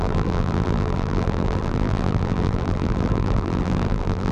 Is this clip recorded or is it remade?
remade